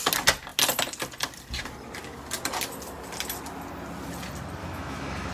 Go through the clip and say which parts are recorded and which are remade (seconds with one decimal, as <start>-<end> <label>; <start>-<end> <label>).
0.0-4.6 recorded; 4.6-5.3 remade